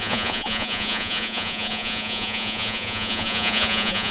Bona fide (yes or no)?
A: no